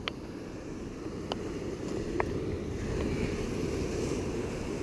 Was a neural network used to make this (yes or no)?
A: no